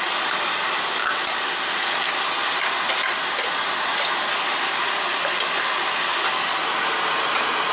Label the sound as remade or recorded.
recorded